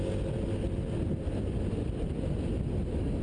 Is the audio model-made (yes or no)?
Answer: no